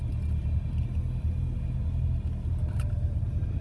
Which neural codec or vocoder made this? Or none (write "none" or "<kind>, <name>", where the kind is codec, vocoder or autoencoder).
none